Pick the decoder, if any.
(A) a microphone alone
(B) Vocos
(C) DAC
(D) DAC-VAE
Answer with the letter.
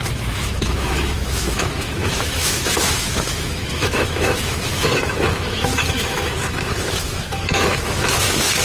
D